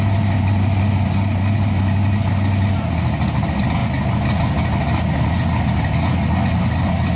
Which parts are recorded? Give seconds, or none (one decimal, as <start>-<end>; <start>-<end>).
0.0-7.2